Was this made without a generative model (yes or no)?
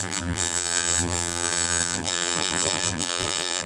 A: no